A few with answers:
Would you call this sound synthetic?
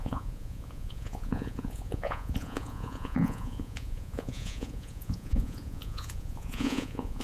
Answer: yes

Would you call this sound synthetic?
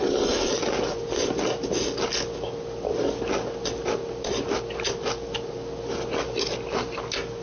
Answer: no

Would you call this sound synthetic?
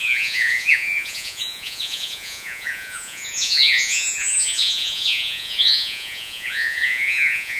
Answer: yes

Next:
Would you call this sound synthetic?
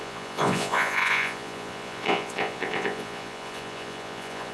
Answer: yes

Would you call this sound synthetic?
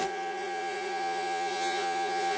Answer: yes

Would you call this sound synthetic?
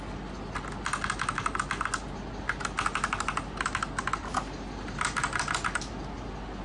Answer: no